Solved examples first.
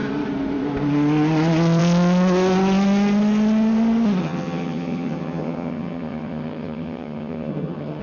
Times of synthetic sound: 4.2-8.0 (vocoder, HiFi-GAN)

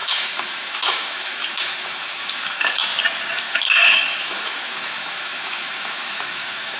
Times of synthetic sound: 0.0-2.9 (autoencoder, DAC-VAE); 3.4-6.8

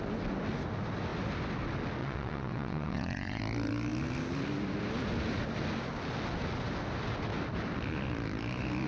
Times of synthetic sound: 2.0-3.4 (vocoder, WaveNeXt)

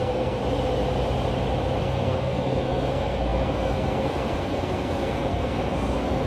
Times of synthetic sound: 0.0-0.4 (codec, SNAC); 1.8-6.3

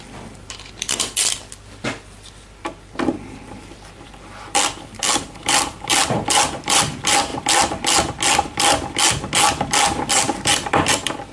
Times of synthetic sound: 0.0-7.3 (vocoder, BigVGAN v2); 10.1-11.3

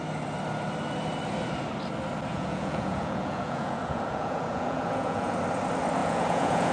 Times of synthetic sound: 2.3-5.3 (vocoder, Vocos); 6.0-6.7